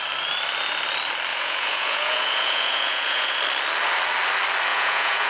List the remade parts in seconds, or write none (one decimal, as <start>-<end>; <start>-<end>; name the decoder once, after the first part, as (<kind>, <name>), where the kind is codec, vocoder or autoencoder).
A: 1.3-3.4 (vocoder, Vocos); 4.7-5.3